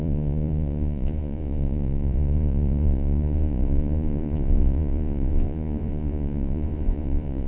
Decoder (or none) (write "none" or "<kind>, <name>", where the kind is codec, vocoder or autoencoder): vocoder, Vocos